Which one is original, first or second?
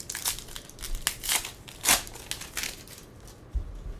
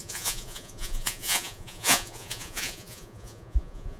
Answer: first